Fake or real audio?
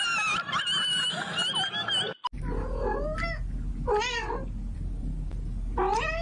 real